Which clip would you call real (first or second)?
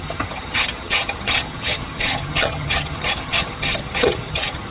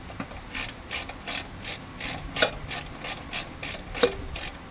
second